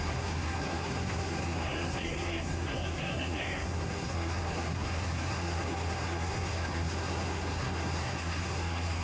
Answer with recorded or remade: remade